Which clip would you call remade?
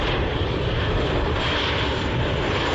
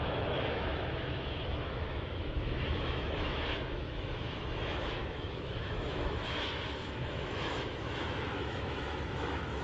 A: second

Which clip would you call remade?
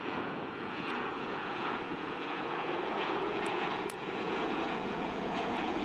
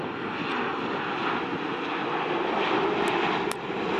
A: first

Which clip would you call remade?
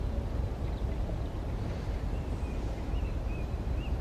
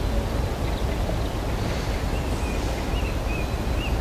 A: first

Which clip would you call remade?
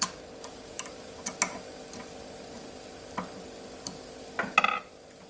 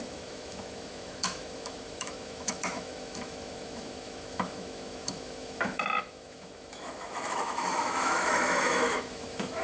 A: second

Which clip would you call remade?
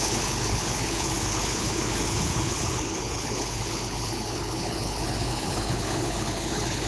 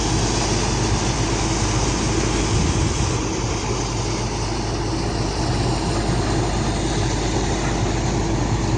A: first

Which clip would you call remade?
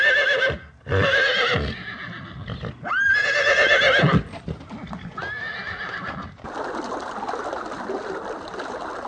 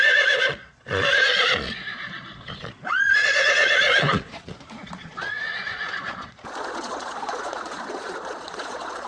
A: second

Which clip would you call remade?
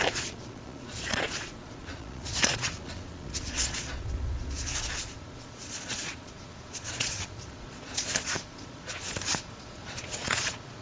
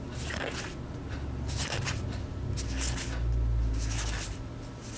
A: first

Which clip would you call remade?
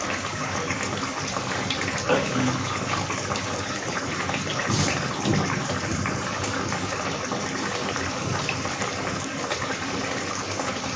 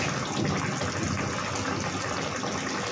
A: first